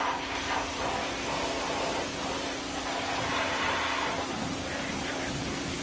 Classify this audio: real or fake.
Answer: real